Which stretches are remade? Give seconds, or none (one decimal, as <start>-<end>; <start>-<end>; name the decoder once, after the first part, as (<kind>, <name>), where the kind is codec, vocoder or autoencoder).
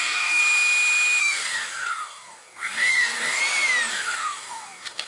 0.0-0.4 (codec, DAC); 1.2-3.4; 3.9-5.1